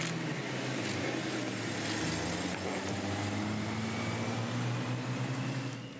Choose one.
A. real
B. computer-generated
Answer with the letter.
A